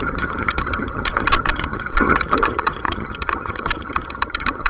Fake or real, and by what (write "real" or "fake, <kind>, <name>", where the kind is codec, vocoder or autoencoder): fake, vocoder, HiFi-GAN